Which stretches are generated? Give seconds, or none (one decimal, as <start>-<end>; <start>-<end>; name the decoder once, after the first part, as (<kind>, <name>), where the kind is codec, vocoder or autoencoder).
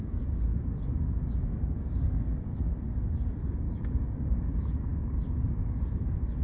0.0-6.4 (codec, DAC)